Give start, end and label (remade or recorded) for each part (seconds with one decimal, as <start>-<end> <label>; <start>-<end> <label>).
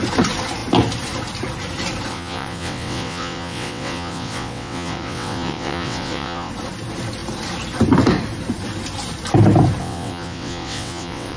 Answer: 0.0-2.1 recorded; 2.1-6.5 remade; 6.5-9.8 recorded; 9.8-11.4 remade